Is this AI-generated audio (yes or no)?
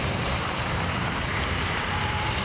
yes